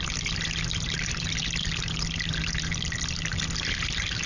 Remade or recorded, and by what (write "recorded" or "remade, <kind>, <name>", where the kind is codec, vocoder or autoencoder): recorded